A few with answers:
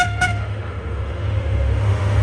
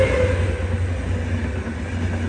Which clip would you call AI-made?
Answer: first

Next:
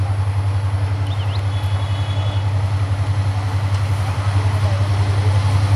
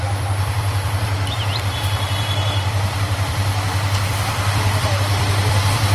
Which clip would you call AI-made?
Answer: second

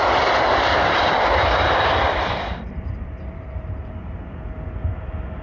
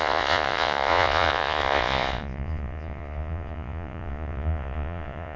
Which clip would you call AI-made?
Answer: second